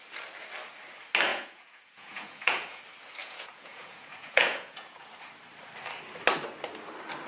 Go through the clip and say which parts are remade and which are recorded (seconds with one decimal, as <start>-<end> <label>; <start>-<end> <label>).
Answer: 0.0-1.3 recorded; 1.3-2.8 remade; 2.8-3.2 recorded; 3.2-5.1 remade; 5.1-7.3 recorded